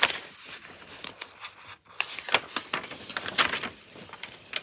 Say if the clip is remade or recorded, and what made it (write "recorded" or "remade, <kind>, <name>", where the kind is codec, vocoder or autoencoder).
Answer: remade, vocoder, BigVGAN v2